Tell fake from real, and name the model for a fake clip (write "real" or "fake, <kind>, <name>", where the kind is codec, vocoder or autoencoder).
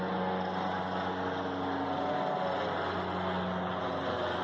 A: real